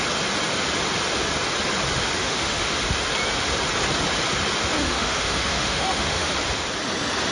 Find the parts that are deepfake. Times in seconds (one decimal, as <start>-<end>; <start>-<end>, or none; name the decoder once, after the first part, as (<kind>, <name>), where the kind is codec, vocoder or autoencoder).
2.2-2.8 (autoencoder, DAC-VAE); 4.8-6.3

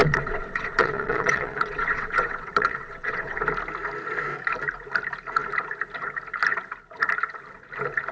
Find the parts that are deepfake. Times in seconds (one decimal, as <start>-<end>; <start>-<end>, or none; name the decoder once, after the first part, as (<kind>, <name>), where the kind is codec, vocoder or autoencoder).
0.0-3.4 (vocoder, WaveNeXt)

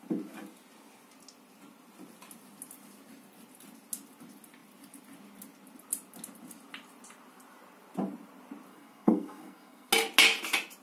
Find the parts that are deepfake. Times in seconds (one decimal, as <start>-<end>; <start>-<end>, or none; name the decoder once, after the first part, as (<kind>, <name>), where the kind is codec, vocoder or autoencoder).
8.7-9.9 (codec, SNAC)

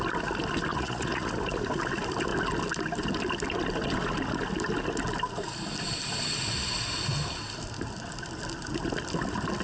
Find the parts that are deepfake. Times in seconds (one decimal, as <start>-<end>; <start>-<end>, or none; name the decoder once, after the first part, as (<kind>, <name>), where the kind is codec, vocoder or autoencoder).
0.7-1.3 (vocoder, Vocos)

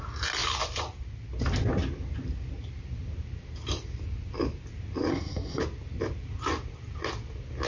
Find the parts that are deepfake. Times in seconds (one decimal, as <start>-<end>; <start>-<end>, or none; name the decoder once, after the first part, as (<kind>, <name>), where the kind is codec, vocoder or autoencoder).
5.1-5.6 (codec, SNAC)

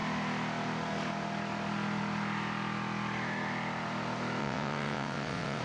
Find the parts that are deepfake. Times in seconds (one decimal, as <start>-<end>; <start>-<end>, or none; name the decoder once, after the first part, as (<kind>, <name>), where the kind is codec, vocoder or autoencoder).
4.4-5.6 (vocoder, WaveNeXt)

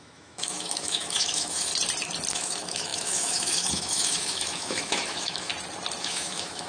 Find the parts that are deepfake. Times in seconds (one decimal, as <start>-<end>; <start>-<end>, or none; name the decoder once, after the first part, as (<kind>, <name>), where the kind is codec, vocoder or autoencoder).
0.0-1.7 (autoencoder, DAC-VAE); 2.3-5.5; 6.0-6.7